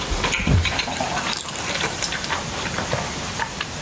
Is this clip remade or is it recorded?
remade